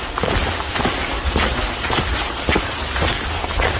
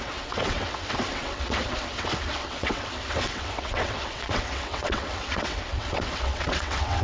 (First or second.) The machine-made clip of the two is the second